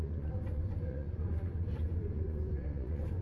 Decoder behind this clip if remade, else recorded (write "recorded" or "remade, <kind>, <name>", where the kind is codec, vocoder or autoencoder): remade, vocoder, Vocos